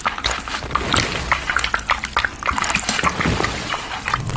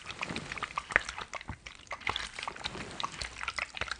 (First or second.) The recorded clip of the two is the first